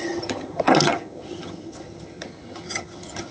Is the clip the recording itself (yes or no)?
no